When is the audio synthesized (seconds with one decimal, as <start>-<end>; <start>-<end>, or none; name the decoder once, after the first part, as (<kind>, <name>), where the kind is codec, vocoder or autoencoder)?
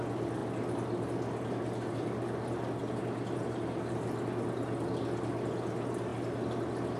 none